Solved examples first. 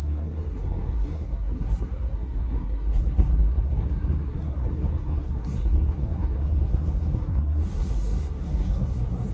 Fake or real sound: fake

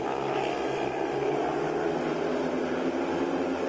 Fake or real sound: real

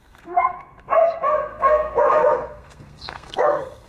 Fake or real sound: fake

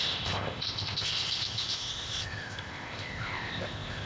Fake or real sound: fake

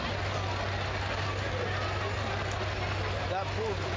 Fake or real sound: real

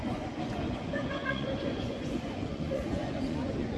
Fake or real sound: fake